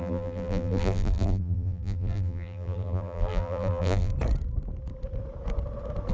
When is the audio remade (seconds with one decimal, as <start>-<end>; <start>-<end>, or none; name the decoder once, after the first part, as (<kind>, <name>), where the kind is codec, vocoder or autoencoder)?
0.0-4.1 (vocoder, BigVGAN v2)